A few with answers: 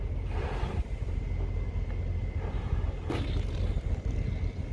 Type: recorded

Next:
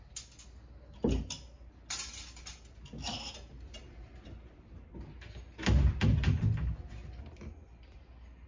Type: recorded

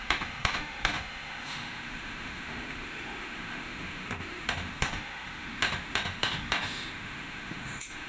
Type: remade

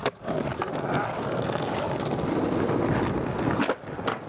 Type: recorded